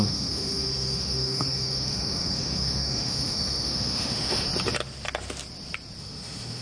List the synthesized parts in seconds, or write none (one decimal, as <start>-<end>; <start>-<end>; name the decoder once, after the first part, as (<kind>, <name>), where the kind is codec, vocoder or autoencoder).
0.0-4.5 (autoencoder, DAC-VAE); 6.0-6.6